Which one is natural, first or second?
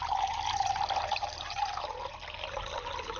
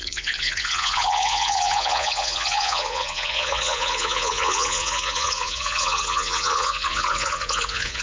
first